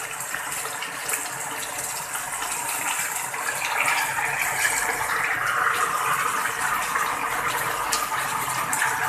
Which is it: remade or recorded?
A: recorded